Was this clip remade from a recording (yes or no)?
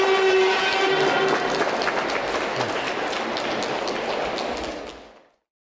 no